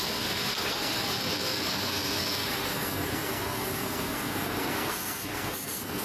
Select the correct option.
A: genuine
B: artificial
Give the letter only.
B